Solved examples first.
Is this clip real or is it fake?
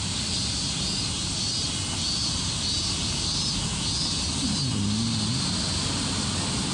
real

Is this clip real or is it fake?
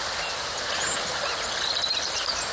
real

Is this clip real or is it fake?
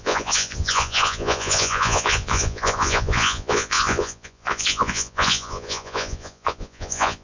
fake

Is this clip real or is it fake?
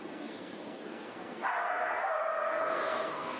fake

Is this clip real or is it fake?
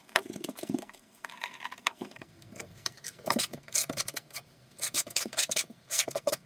fake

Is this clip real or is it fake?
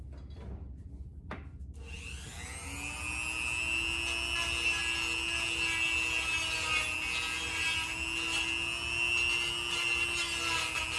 real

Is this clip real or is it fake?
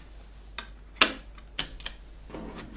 real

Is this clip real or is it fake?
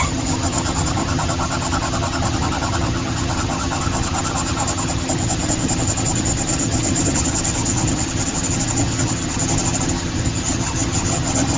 fake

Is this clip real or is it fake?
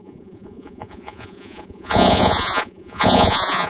fake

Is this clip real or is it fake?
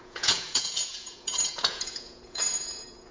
fake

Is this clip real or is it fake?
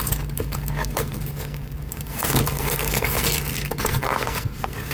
fake